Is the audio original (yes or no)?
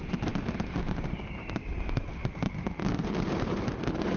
no